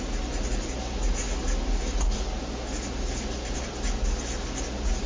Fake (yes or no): no